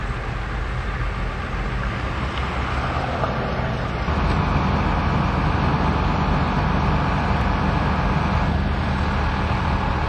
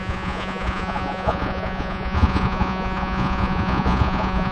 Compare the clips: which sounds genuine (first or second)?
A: first